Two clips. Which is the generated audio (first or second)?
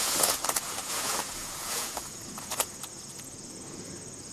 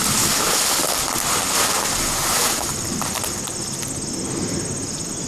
first